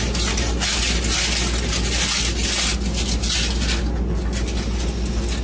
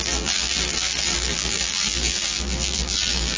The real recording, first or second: first